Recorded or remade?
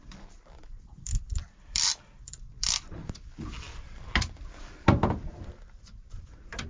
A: remade